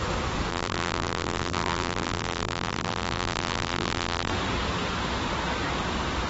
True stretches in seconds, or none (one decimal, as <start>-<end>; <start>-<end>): 0.0-0.5; 4.3-6.3

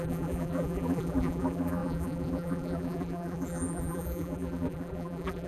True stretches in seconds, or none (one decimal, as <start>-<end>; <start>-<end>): none

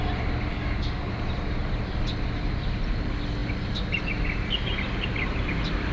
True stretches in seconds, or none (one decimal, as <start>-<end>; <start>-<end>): 0.0-0.5; 1.1-5.9

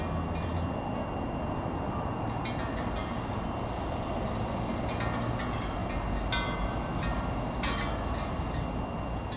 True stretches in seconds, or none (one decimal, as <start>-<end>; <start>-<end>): 0.0-9.4

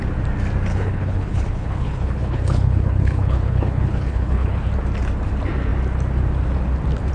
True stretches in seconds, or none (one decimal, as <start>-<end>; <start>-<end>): 0.0-0.7; 4.7-7.1

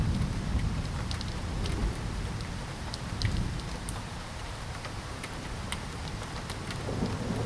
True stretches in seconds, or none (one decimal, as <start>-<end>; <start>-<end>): 0.0-1.8; 6.3-7.5

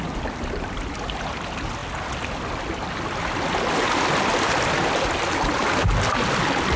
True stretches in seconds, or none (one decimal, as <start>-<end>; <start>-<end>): 0.0-6.8